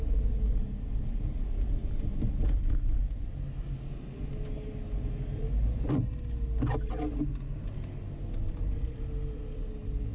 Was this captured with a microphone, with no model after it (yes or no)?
yes